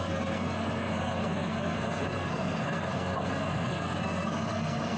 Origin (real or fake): fake